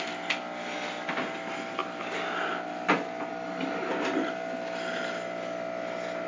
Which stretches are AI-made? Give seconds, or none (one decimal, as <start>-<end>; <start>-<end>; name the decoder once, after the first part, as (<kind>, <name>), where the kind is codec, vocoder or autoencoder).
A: 3.3-3.9 (codec, DAC)